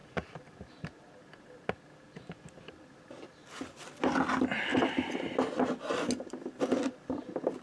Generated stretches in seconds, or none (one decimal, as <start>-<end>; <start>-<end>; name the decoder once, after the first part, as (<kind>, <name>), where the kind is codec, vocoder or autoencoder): 0.0-0.9 (vocoder, BigVGAN v2)